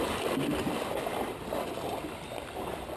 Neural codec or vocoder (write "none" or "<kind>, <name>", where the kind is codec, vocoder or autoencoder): none